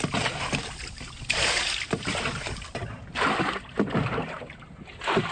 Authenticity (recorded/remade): remade